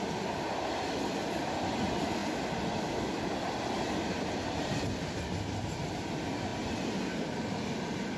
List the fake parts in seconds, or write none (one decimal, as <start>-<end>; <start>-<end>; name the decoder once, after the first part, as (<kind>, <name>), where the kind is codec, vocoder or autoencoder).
none